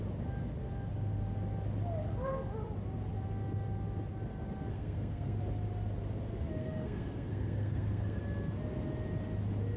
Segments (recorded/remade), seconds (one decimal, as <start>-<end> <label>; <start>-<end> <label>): 0.0-4.7 recorded; 4.7-5.4 remade; 5.4-6.6 recorded; 6.6-8.2 remade; 8.2-9.8 recorded

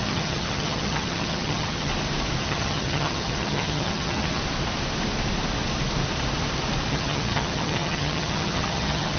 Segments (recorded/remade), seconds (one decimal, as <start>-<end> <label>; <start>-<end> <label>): 0.0-1.9 remade; 1.9-2.4 recorded; 2.4-4.4 remade; 4.4-6.9 recorded; 6.9-9.2 remade

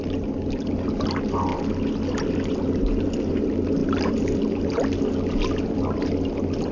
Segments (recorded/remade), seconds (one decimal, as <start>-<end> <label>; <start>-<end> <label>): 0.0-3.8 recorded; 3.8-5.0 remade; 5.0-6.7 recorded

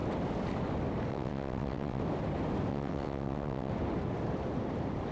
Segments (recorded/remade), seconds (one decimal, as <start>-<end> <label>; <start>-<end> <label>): 0.0-1.1 recorded; 1.1-2.0 remade; 2.0-2.7 recorded; 2.7-3.7 remade; 3.7-5.1 recorded

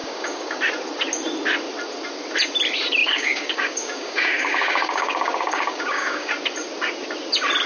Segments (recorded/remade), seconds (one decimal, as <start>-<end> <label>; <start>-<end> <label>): 0.0-0.6 remade; 0.6-3.0 recorded; 3.0-6.3 remade; 6.3-7.7 recorded

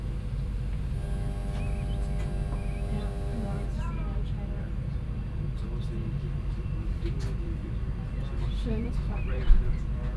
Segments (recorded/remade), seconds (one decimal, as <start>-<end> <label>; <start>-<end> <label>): 0.0-4.9 recorded; 4.9-10.2 remade

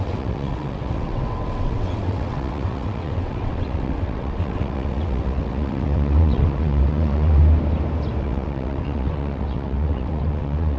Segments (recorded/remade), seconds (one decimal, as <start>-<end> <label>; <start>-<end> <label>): 0.0-7.4 remade; 7.4-8.2 recorded; 8.2-10.8 remade